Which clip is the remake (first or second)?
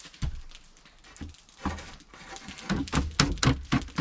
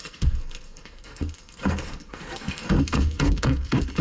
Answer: second